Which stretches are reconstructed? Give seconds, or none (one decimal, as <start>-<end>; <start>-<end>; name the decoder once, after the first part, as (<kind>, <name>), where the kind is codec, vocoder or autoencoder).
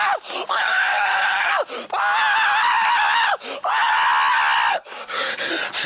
0.5-1.5 (codec, SNAC); 4.7-5.5